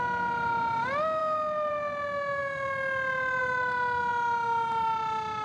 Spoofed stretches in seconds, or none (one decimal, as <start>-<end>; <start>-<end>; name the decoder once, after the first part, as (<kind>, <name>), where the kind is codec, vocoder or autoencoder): none